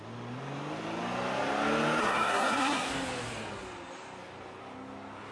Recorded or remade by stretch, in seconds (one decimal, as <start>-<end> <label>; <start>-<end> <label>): 0.0-2.0 recorded; 2.0-2.9 remade; 2.9-5.3 recorded

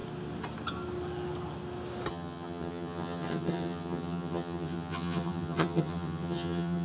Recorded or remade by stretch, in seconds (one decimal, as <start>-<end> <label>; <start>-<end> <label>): 0.0-2.1 recorded; 2.1-6.8 remade

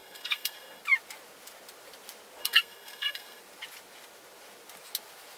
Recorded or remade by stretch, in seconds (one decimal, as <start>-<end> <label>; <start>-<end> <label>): 0.0-0.8 remade; 0.8-2.4 recorded; 2.4-3.4 remade; 3.4-5.4 recorded

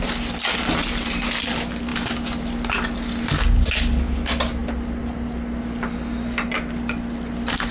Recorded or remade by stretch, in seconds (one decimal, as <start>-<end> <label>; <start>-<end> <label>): 0.0-7.7 recorded

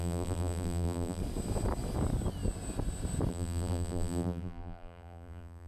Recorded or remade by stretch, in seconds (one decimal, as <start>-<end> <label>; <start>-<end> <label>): 0.0-1.2 remade; 1.2-3.3 recorded; 3.3-5.7 remade